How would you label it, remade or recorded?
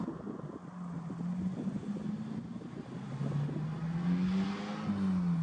recorded